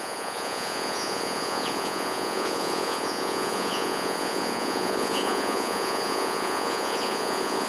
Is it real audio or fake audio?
fake